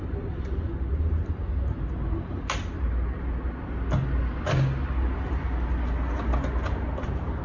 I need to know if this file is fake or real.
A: real